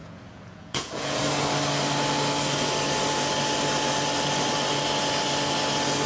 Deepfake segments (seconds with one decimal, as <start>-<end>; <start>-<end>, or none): 0.0-1.2